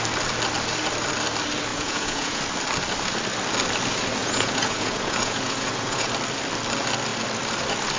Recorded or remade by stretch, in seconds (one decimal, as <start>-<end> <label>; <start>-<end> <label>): 0.0-1.7 recorded; 1.7-2.4 remade; 2.4-4.2 recorded; 4.2-6.1 remade; 6.1-8.0 recorded